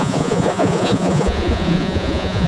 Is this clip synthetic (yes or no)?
yes